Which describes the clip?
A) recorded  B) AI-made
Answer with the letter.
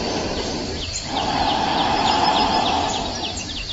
A